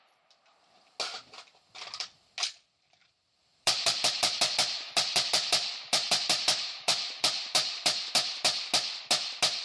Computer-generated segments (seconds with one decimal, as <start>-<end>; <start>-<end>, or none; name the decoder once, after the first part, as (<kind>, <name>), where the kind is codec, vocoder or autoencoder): 3.0-8.1 (vocoder, BigVGAN v2)